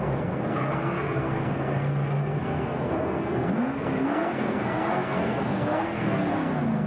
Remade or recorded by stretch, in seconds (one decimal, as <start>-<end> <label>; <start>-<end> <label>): 0.0-6.9 remade